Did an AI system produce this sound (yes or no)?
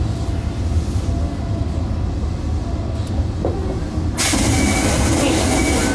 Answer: no